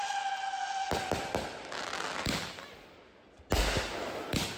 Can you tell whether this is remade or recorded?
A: recorded